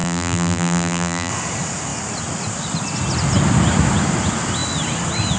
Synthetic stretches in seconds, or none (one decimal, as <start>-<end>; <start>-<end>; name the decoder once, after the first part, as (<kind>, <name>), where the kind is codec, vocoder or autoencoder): 0.0-1.3 (vocoder, BigVGAN v2)